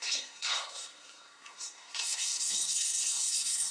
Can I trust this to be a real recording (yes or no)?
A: no